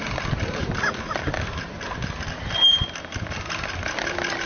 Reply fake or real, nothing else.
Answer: real